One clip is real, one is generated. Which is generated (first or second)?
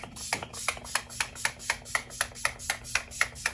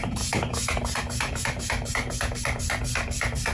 second